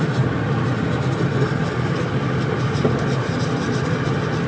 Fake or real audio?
real